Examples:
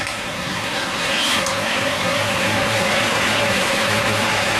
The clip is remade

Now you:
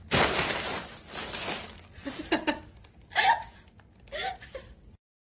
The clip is recorded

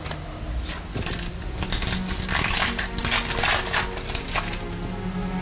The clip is recorded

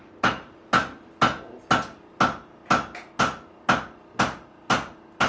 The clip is recorded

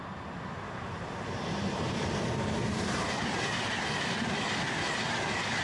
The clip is recorded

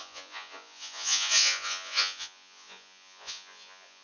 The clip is remade